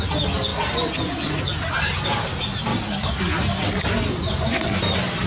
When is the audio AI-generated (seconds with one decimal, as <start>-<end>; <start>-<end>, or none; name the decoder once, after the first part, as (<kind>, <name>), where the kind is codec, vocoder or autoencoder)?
none